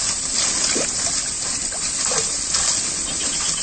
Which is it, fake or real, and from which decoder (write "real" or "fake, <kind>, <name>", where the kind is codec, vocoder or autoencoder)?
real